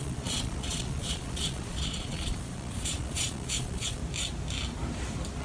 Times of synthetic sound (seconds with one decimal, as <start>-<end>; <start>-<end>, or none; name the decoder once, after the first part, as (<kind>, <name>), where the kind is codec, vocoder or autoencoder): 0.0-4.0 (vocoder, Vocos)